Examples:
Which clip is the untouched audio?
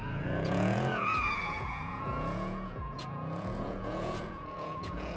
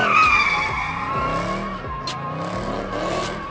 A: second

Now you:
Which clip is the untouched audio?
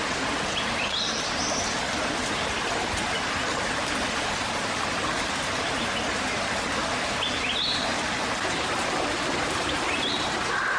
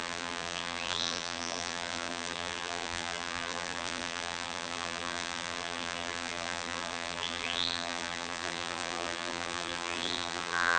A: first